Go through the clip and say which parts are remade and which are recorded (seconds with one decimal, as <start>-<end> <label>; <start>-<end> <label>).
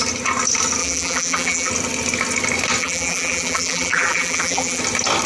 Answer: 0.0-0.8 recorded; 0.8-1.7 remade; 1.7-2.8 recorded; 2.8-4.8 remade; 4.8-5.3 recorded